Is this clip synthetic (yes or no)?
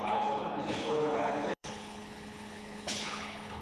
yes